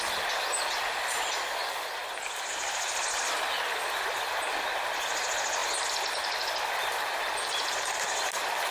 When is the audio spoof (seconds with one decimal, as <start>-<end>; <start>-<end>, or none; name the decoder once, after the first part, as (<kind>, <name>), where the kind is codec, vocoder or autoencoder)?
none